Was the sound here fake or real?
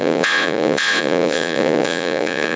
fake